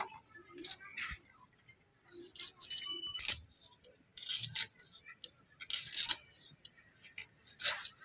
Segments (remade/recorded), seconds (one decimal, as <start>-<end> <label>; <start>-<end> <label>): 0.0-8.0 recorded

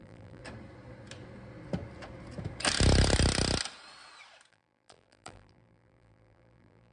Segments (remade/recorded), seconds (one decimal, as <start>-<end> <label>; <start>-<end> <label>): 0.0-0.4 remade; 0.4-4.5 recorded; 4.5-6.9 remade

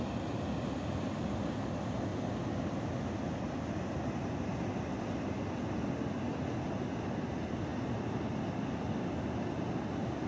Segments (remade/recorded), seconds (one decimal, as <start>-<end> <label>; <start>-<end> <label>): 0.0-10.3 recorded

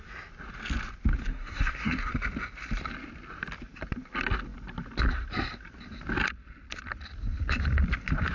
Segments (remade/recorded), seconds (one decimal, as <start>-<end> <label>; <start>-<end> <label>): 0.0-1.2 recorded; 1.2-2.1 remade; 2.1-8.3 recorded

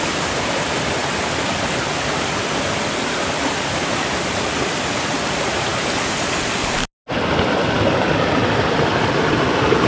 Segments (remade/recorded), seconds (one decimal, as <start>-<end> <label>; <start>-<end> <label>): 0.0-9.9 recorded

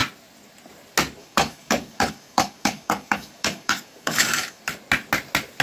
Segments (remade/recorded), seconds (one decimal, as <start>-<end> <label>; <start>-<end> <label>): 0.0-1.2 recorded; 1.2-4.6 remade; 4.6-5.6 recorded

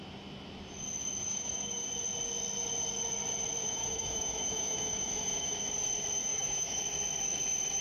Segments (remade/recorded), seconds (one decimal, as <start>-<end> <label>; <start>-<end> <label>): 0.0-1.3 recorded; 1.3-1.9 remade; 1.9-3.6 recorded; 3.6-5.7 remade; 5.7-6.3 recorded; 6.3-6.8 remade; 6.8-7.8 recorded

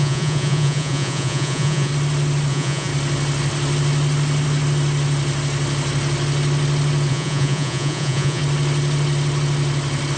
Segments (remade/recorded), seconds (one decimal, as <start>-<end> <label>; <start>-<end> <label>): 0.0-1.9 remade; 1.9-2.5 recorded; 2.5-2.9 remade; 2.9-7.1 recorded; 7.1-8.4 remade; 8.4-10.2 recorded